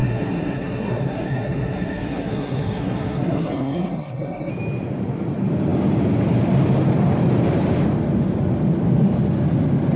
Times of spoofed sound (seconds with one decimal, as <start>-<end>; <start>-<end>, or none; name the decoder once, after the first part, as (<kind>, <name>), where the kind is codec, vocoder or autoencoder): 0.0-4.5 (codec, SNAC)